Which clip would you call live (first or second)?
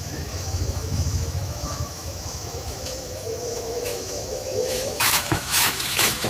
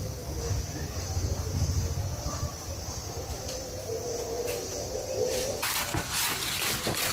second